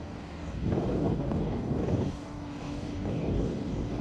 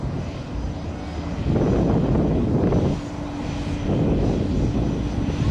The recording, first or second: second